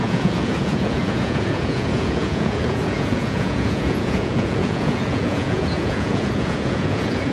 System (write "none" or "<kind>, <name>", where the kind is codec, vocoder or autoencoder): vocoder, Vocos